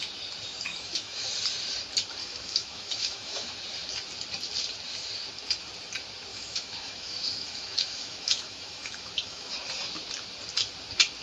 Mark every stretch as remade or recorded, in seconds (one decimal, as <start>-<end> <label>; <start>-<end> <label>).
0.0-0.7 recorded; 0.7-1.3 remade; 1.3-2.2 recorded; 2.2-3.5 remade; 3.5-6.3 recorded; 6.3-9.5 remade; 9.5-11.2 recorded